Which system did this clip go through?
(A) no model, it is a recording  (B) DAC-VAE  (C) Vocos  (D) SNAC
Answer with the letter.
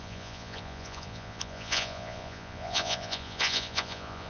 C